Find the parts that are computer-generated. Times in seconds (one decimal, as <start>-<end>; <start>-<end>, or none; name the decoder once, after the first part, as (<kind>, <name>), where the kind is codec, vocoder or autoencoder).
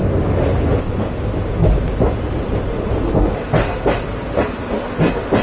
0.0-0.6 (vocoder, BigVGAN v2); 1.6-4.1